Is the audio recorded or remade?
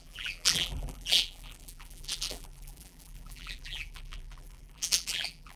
remade